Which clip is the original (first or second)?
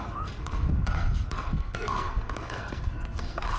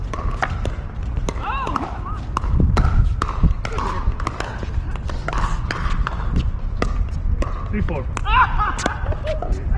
second